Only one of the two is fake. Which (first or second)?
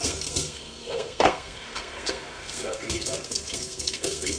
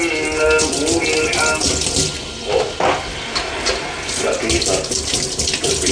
first